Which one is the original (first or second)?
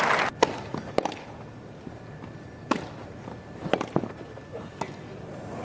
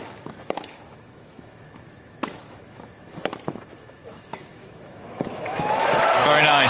first